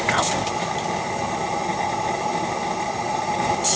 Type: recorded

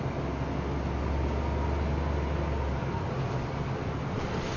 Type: recorded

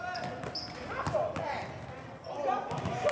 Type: recorded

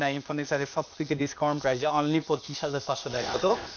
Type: remade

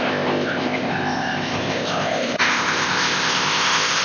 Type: remade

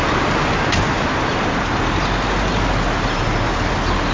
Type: recorded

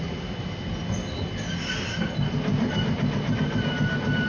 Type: recorded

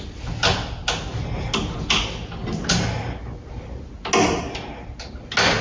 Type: recorded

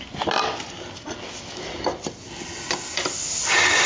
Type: recorded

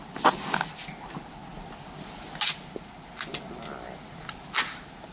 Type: recorded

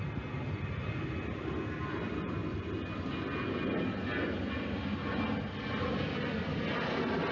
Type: recorded